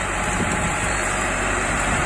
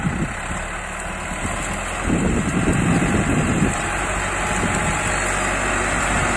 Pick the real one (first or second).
second